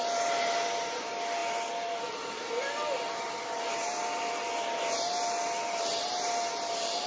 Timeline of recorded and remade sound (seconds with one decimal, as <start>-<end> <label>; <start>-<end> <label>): 0.0-7.1 recorded